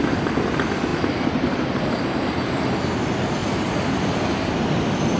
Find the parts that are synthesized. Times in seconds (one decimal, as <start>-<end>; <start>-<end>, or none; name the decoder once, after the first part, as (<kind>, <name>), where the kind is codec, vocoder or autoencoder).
none